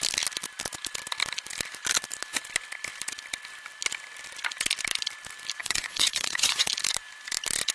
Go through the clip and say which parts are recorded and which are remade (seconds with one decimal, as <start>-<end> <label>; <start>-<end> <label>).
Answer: 0.0-5.6 recorded; 5.6-6.7 remade; 6.7-7.7 recorded